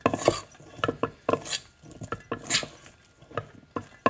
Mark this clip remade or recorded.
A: recorded